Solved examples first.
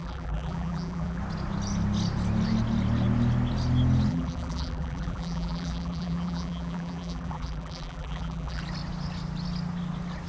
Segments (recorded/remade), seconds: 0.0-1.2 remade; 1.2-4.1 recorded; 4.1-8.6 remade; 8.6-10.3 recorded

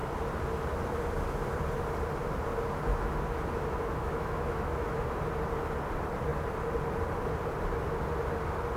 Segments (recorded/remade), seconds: 0.0-2.9 recorded; 2.9-5.2 remade; 5.2-8.8 recorded